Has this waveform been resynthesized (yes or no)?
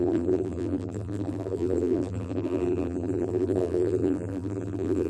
yes